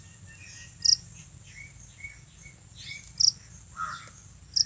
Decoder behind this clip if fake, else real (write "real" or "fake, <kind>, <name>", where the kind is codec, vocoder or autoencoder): real